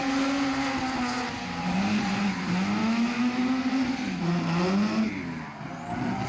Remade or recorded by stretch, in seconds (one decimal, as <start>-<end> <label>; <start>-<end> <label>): 0.0-2.8 recorded; 2.8-3.4 remade; 3.4-6.3 recorded